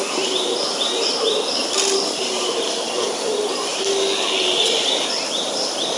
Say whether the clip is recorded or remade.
recorded